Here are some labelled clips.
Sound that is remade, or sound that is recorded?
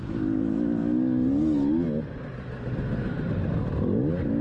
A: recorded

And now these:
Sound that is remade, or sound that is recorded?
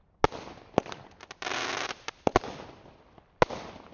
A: recorded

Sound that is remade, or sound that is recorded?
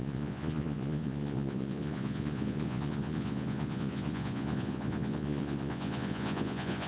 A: remade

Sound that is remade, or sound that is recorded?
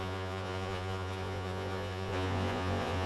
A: remade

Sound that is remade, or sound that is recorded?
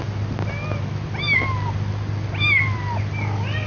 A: recorded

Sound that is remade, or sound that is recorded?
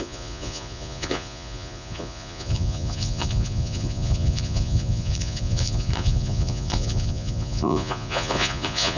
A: remade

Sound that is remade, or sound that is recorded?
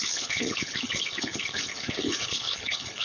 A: remade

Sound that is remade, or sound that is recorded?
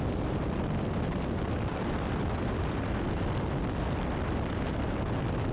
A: remade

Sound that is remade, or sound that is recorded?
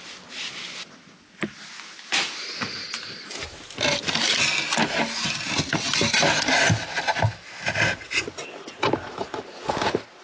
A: recorded